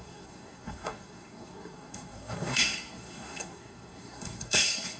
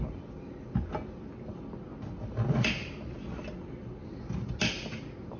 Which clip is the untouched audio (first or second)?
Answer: second